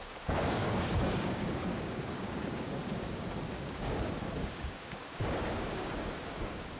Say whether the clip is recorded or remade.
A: remade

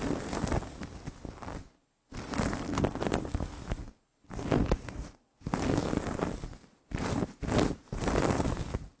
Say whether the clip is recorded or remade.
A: recorded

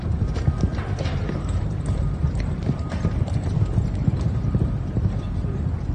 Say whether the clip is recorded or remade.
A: remade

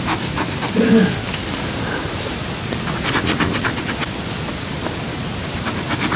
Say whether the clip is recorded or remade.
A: recorded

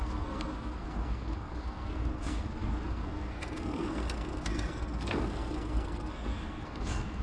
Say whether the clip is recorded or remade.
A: remade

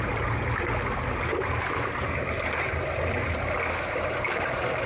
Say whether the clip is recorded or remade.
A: recorded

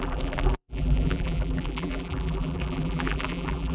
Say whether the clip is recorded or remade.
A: remade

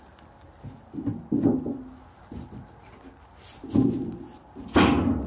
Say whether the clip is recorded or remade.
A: recorded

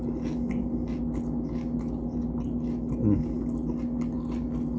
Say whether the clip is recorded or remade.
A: recorded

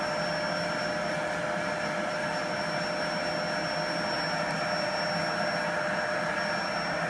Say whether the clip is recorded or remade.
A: recorded